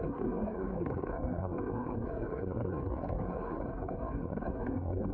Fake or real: fake